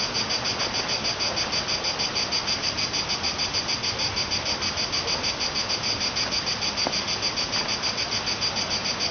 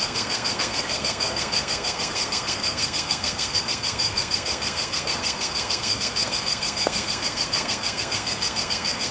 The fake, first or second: second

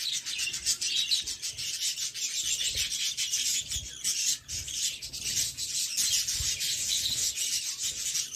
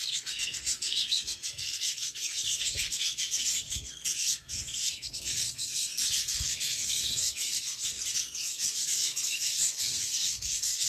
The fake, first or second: second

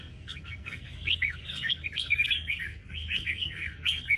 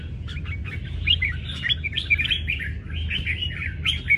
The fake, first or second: first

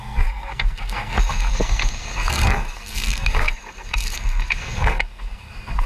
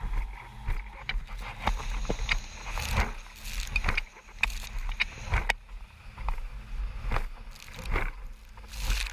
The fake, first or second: first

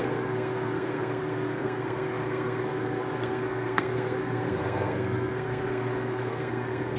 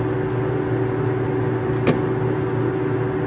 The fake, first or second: first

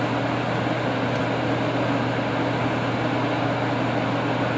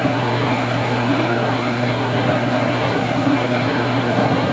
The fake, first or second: second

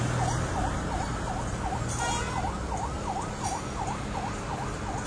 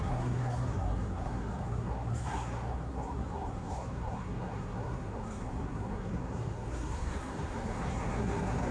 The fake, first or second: second